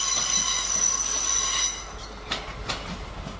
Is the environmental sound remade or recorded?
recorded